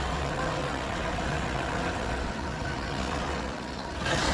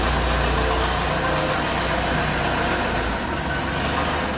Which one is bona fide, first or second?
second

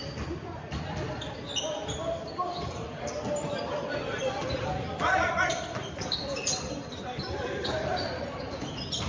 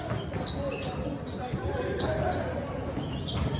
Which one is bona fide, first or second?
second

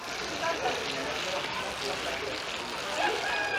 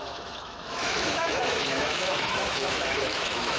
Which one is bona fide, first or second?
first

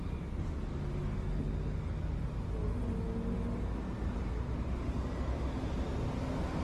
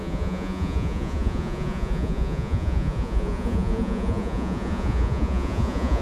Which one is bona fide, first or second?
first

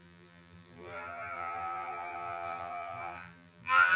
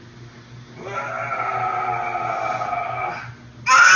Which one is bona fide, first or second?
second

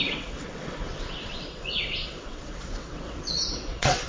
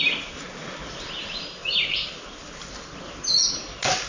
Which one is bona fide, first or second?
second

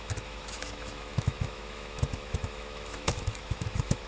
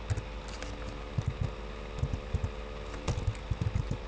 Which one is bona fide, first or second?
second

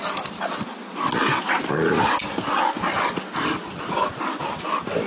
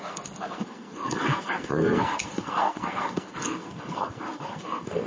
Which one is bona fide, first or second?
first